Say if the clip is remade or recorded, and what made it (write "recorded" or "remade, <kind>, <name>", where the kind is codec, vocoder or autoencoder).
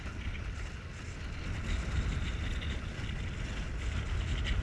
recorded